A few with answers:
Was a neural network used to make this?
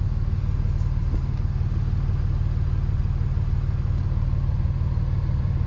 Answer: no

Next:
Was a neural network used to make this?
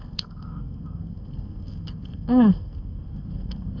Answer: yes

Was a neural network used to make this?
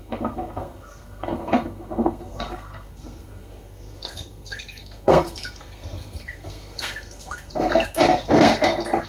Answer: yes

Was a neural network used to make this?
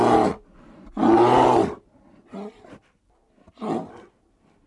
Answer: no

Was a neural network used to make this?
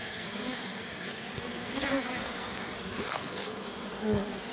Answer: yes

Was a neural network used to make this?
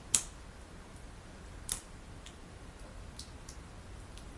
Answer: no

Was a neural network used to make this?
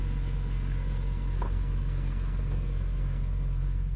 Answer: yes